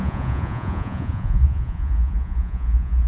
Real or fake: fake